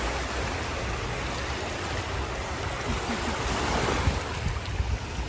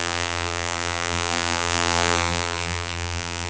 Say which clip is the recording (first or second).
first